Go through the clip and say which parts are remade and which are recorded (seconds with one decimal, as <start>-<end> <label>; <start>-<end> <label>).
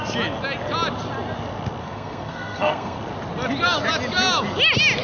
0.0-1.8 recorded; 1.8-3.0 remade; 3.0-5.0 recorded